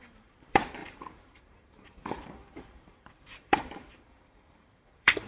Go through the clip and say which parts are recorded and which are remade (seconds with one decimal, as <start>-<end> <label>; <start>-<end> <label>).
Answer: 0.0-5.3 remade